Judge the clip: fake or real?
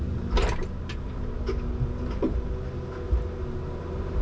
real